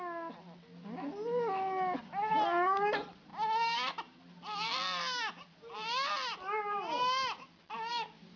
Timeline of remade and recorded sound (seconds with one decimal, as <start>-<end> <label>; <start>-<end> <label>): 0.0-8.4 recorded